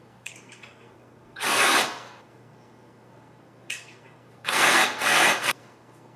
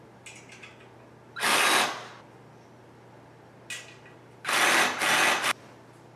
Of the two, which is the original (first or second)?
second